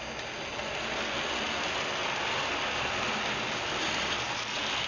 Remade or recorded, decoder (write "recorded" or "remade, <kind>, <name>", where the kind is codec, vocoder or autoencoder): recorded